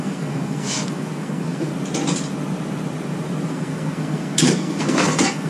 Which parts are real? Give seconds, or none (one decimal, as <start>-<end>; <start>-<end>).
1.7-3.5

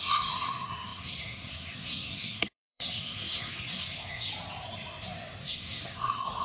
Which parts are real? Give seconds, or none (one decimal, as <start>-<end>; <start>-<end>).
4.3-5.4

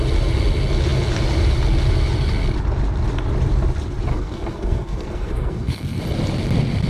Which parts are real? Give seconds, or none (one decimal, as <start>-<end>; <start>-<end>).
0.0-4.1; 6.0-6.9

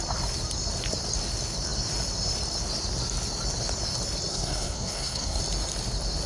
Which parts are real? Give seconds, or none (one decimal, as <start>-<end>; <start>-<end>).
0.0-4.3; 5.4-6.3

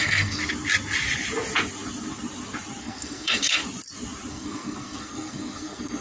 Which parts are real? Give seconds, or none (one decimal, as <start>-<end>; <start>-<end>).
0.4-2.8; 3.6-4.3

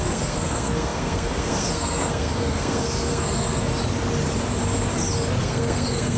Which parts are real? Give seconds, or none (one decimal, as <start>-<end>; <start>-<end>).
3.7-5.4

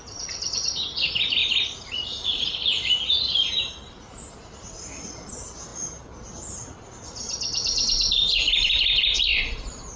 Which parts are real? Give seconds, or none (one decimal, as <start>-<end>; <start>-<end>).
0.0-10.0